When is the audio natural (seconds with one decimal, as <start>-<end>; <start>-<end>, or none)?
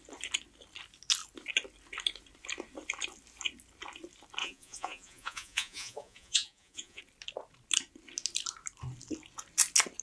0.0-4.4; 7.0-10.0